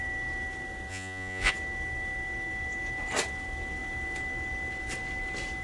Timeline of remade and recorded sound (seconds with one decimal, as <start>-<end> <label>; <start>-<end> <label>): 0.0-0.9 recorded; 0.9-1.5 remade; 1.5-5.6 recorded